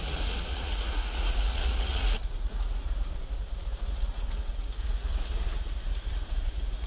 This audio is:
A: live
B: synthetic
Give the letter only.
B